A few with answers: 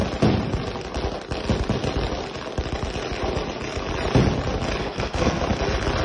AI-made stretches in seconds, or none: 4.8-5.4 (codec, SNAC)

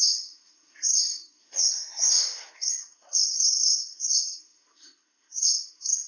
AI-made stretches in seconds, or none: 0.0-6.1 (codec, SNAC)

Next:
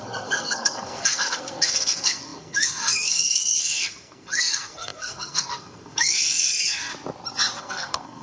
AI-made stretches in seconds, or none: 0.0-6.9 (codec, SNAC); 7.6-8.2

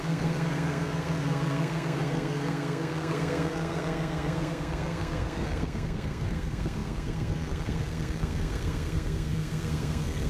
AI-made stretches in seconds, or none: 0.0-10.3 (codec, SNAC)

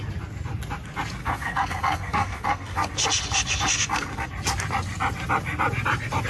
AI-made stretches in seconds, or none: 1.2-2.9 (codec, SNAC); 3.7-4.3

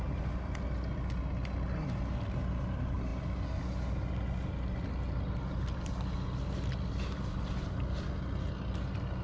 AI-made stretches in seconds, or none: none

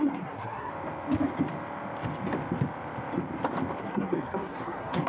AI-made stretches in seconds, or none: 0.0-0.7 (codec, SNAC); 3.8-5.1

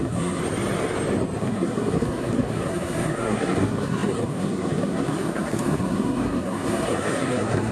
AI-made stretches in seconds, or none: 0.0-0.4 (codec, SNAC); 1.4-7.7